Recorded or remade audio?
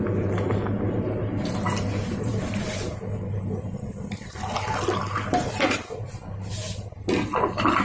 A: recorded